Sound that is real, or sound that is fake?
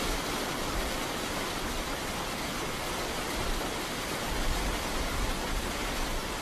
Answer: real